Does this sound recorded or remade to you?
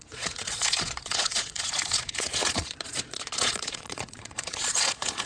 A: remade